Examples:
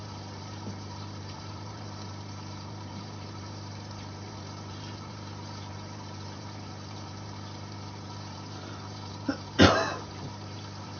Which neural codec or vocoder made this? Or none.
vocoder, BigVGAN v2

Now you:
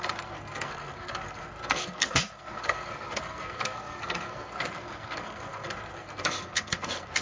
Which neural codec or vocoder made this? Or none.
codec, SNAC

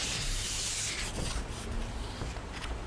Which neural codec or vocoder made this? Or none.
none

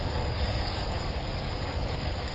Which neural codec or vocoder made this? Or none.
codec, DAC